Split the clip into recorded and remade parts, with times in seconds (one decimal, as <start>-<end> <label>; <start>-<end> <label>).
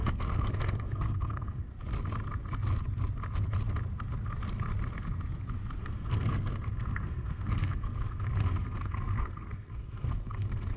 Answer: 0.0-1.7 remade; 1.7-5.8 recorded; 5.8-10.8 remade